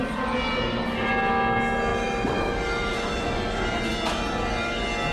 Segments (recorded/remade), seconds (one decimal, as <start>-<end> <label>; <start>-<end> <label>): 0.0-1.1 remade; 1.1-1.9 recorded; 1.9-3.8 remade; 3.8-5.1 recorded